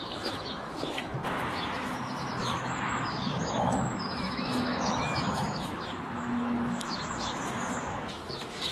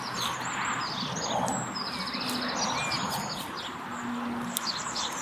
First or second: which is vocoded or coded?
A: first